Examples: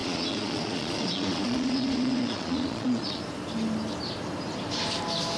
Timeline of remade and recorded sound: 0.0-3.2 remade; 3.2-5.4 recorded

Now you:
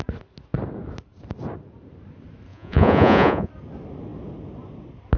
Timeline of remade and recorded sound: 0.0-2.5 recorded; 2.5-3.5 remade; 3.5-5.2 recorded

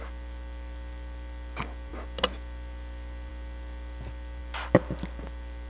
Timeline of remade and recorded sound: 0.0-5.7 recorded